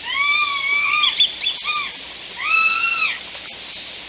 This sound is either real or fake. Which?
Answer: real